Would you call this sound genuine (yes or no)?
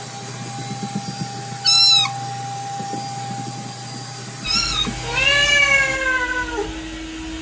yes